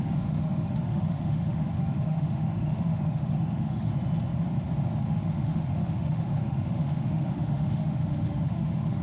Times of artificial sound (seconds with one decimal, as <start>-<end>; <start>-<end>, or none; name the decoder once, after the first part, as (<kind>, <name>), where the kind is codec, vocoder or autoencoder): 0.0-3.9 (autoencoder, DAC-VAE); 5.0-9.0